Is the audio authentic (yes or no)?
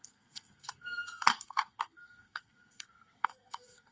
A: no